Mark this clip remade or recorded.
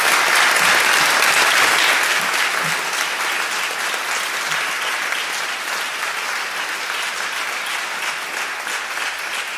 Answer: recorded